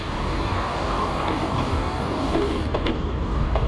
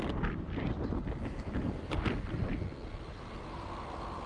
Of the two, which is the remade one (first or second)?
first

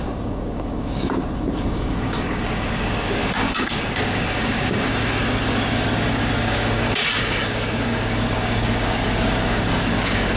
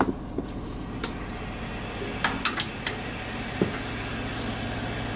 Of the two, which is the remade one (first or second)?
first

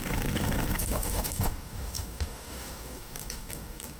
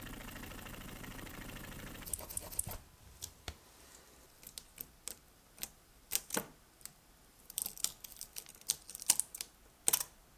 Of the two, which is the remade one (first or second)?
first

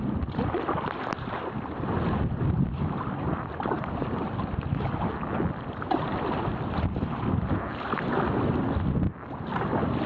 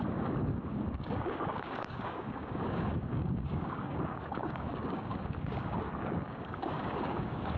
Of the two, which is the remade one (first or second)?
second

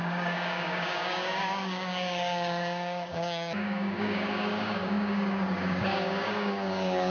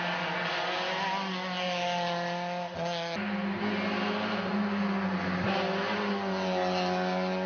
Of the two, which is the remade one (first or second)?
first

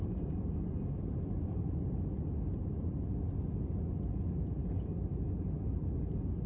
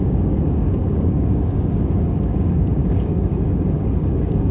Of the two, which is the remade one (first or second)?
second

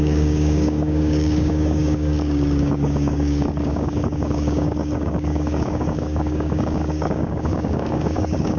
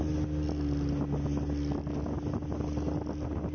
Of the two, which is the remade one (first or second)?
first